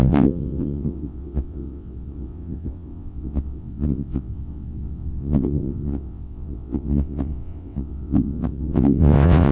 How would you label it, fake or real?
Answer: fake